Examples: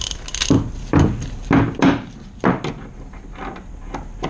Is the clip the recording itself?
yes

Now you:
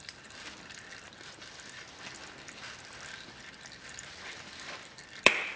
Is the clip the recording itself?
no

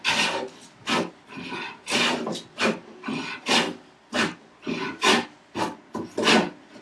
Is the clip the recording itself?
yes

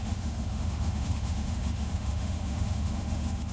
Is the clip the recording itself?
no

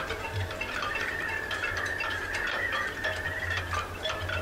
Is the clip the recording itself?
no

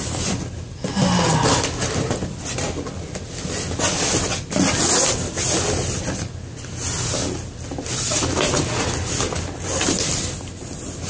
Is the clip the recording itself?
yes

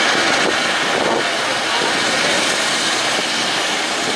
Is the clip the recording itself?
yes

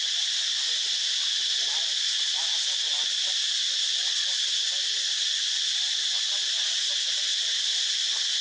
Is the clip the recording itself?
yes